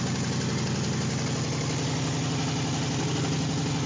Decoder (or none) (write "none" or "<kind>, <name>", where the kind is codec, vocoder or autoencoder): none